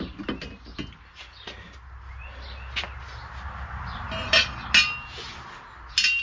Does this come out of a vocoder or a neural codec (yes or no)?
no